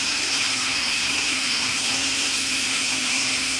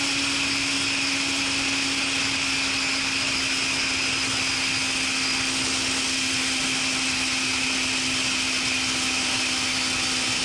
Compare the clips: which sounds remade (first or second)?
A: first